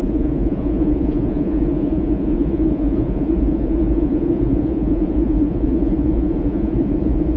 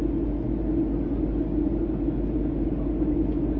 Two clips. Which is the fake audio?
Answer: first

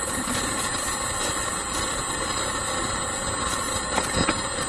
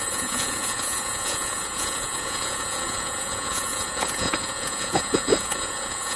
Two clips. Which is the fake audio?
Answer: second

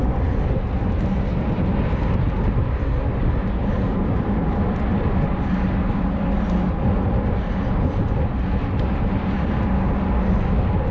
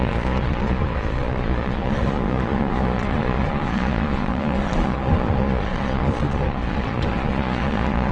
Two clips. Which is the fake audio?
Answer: second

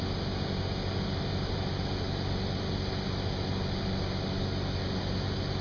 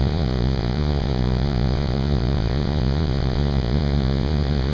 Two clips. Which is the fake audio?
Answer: second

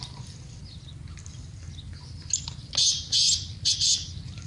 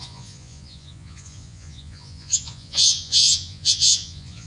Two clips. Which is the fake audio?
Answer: second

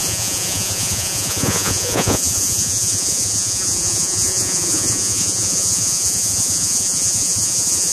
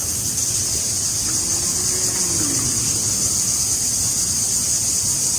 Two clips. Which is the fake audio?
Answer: first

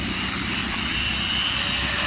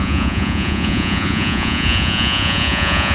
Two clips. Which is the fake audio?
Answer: second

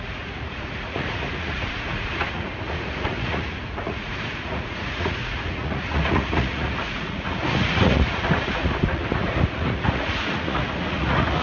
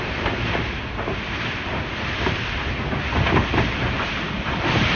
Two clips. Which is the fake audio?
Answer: first